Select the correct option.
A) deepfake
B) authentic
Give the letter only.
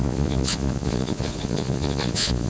A